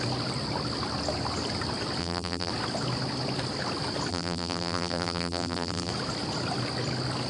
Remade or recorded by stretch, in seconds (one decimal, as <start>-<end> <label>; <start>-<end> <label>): 0.0-2.0 recorded; 2.0-2.5 remade; 2.5-4.1 recorded; 4.1-5.9 remade; 5.9-7.3 recorded